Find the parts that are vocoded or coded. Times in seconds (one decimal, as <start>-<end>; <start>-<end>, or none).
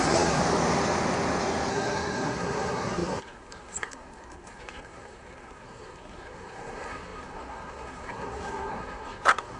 0.0-0.4; 1.7-9.6